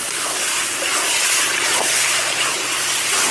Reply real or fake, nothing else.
real